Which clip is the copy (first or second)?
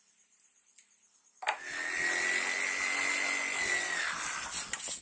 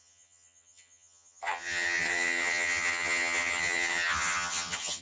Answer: second